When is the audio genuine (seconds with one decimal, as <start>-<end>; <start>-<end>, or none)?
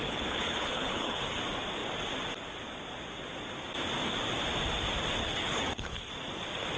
1.4-5.2; 6.1-6.8